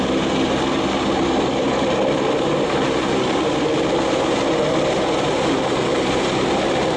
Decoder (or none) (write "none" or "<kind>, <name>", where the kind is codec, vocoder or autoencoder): none